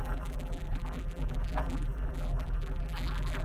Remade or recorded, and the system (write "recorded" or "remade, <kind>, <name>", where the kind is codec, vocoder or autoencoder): remade, vocoder, BigVGAN v2